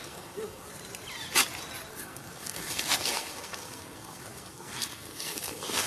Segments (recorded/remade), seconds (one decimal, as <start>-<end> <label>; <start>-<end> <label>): 0.0-0.7 remade; 0.7-1.9 recorded; 1.9-5.9 remade